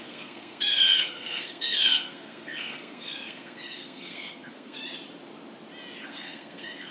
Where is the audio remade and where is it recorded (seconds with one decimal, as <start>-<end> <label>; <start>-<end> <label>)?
0.0-4.8 remade; 4.8-6.0 recorded; 6.0-6.9 remade